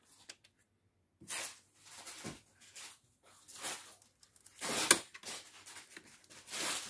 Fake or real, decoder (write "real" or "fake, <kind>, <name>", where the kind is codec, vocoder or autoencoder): real